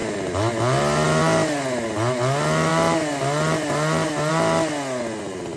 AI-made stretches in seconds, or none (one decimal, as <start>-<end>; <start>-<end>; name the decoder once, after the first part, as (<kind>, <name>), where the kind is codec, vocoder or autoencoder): none